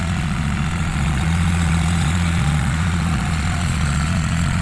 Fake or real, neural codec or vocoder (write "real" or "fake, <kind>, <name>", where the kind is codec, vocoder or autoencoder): fake, vocoder, Vocos